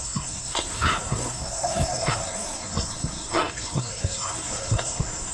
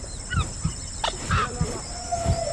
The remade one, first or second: first